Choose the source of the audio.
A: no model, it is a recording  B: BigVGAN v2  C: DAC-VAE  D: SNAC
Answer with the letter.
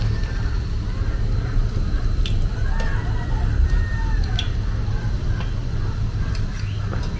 A